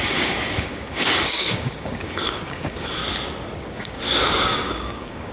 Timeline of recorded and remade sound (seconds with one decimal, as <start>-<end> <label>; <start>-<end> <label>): 0.0-3.0 remade; 3.0-3.7 recorded; 3.7-5.3 remade